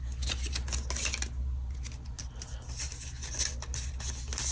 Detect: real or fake real